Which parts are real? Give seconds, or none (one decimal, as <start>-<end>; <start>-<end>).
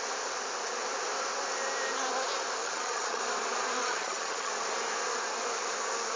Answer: 0.0-2.6; 3.2-3.8; 4.5-6.2